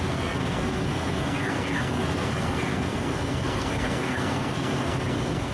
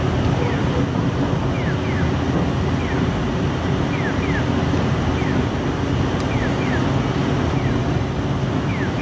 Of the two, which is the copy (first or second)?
first